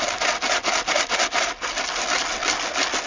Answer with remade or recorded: recorded